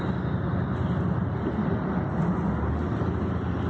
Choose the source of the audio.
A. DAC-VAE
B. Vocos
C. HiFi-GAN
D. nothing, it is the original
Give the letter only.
D